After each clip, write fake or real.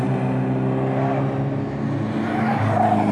real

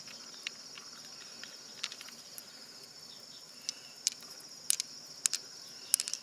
real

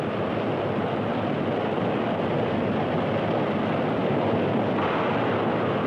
real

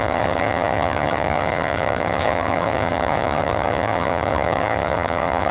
fake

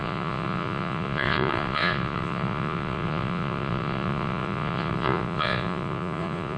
fake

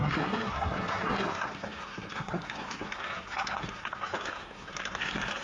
fake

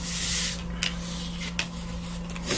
real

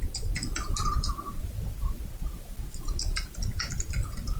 real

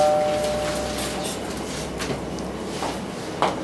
real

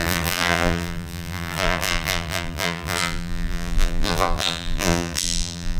fake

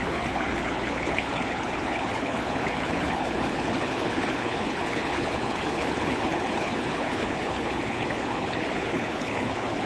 fake